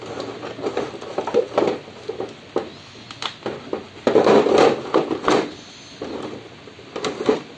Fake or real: real